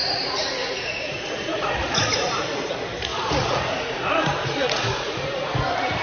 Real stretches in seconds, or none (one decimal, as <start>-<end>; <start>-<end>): 2.4-3.1; 5.5-6.0